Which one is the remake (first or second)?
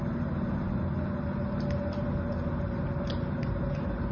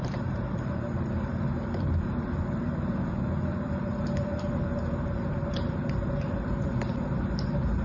second